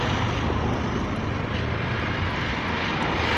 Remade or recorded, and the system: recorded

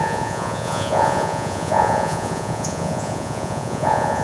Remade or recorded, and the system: remade, vocoder, Vocos